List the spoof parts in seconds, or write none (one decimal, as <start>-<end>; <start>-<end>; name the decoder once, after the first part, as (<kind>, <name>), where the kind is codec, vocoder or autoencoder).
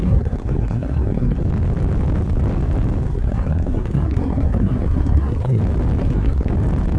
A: 0.0-1.4 (codec, SNAC); 3.1-5.6; 6.0-6.5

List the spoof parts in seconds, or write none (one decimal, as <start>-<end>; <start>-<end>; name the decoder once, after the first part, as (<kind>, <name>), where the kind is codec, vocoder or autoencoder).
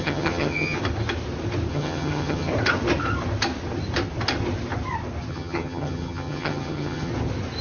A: 0.0-0.8 (vocoder, HiFi-GAN); 1.7-2.5; 5.3-7.1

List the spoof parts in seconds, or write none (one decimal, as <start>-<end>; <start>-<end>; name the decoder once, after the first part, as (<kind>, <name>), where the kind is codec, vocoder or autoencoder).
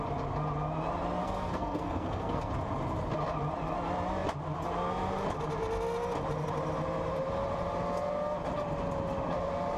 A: 1.2-2.5 (codec, SNAC)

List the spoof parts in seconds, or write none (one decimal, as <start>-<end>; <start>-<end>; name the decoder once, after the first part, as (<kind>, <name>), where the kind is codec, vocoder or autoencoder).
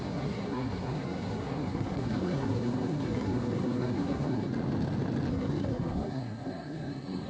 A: 0.0-4.5 (codec, SNAC); 5.3-7.3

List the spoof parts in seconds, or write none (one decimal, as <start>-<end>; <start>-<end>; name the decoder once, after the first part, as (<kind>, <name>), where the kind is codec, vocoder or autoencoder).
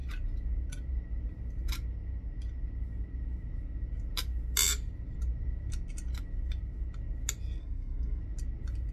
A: 7.6-8.2 (codec, SNAC)